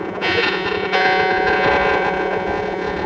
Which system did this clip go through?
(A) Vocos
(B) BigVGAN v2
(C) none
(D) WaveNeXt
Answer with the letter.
A